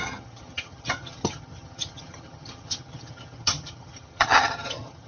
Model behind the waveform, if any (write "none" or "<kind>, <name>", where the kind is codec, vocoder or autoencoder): vocoder, HiFi-GAN